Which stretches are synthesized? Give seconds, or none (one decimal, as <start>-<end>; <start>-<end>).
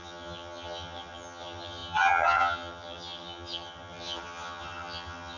0.0-5.4